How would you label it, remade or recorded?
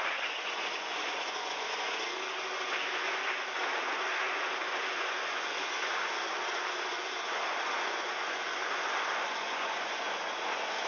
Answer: remade